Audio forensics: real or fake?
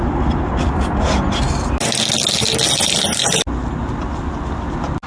real